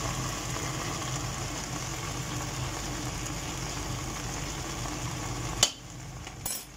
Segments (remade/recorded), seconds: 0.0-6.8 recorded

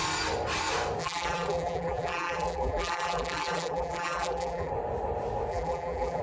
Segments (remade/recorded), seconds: 0.0-1.0 recorded; 1.0-4.7 remade; 4.7-5.5 recorded; 5.5-6.2 remade

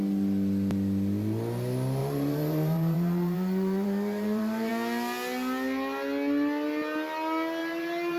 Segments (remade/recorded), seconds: 0.0-2.0 recorded; 2.0-4.7 remade; 4.7-7.6 recorded; 7.6-8.2 remade

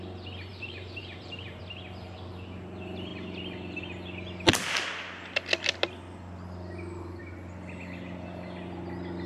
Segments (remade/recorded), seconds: 0.0-0.5 recorded; 0.5-1.6 remade; 1.6-9.3 recorded

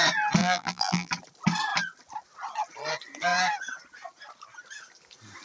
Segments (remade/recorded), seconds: 0.0-0.4 recorded; 0.4-1.1 remade; 1.1-5.4 recorded

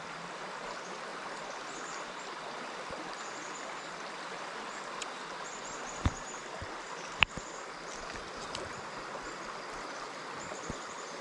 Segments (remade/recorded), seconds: 0.0-11.2 recorded